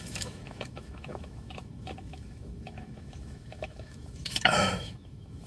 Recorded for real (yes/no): no